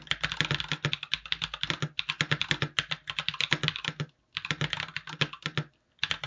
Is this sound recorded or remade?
recorded